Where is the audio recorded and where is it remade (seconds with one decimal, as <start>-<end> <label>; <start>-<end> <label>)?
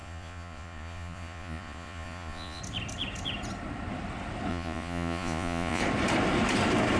0.0-2.6 remade; 2.6-4.5 recorded; 4.5-5.8 remade; 5.8-7.0 recorded